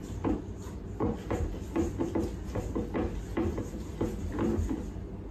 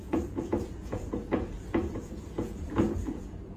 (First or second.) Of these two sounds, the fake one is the second